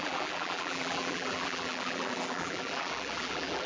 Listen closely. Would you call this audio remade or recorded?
remade